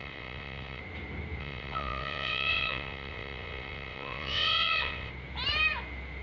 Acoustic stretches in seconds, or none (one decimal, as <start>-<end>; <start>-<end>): 0.8-1.4; 5.1-6.2